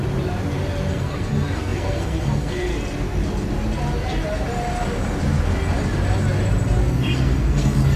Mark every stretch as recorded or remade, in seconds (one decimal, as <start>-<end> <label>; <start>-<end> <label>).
0.0-0.9 recorded; 0.9-2.7 remade; 2.7-6.8 recorded; 6.8-8.0 remade